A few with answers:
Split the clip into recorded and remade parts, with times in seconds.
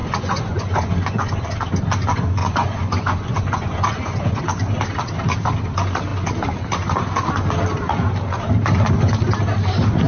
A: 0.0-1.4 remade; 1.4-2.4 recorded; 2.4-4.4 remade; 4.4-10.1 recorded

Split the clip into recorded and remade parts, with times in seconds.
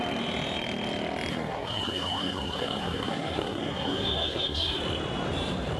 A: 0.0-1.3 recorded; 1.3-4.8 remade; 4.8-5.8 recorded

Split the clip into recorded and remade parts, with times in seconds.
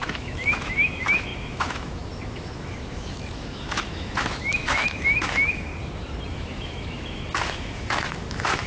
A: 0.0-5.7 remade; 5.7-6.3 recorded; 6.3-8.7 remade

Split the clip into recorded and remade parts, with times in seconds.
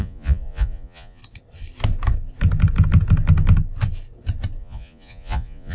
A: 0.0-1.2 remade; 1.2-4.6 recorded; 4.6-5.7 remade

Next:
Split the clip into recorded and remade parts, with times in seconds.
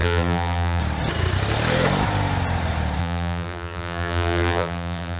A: 0.0-0.8 remade; 0.8-3.0 recorded; 3.0-5.2 remade